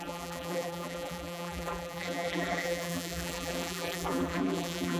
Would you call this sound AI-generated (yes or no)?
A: yes